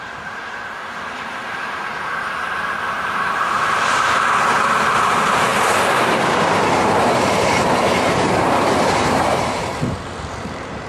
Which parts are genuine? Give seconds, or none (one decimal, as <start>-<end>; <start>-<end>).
0.4-1.1; 5.5-6.5